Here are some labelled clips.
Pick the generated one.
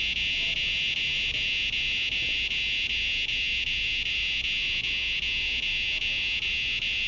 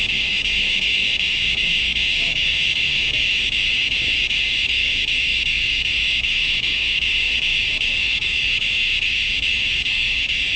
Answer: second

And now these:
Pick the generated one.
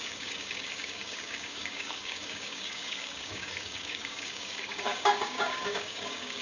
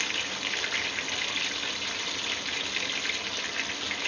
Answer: first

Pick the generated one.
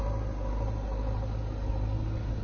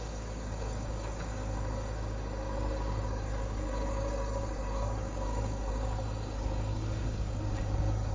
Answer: second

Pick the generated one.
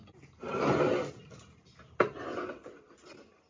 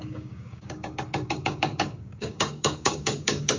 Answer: second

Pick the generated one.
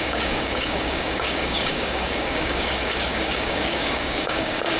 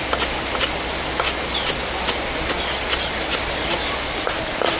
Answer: first